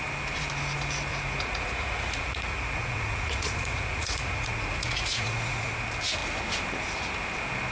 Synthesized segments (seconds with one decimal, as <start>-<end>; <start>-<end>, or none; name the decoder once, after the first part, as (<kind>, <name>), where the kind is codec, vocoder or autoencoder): 1.1-5.7 (vocoder, Vocos)